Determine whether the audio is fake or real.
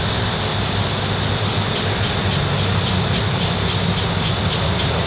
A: real